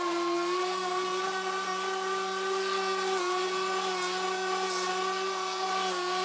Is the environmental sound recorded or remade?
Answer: recorded